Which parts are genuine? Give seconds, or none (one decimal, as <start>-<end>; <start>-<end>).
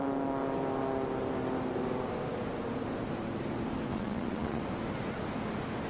0.0-3.9; 4.6-5.9